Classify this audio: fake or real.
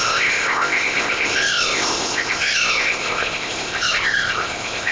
fake